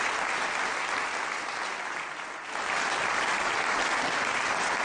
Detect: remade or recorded recorded